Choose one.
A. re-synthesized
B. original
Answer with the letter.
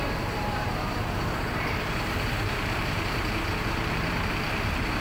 A